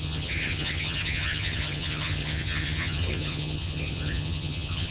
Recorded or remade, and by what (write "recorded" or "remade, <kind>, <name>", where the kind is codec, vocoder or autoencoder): remade, vocoder, HiFi-GAN